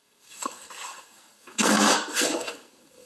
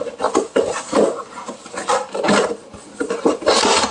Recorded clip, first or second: second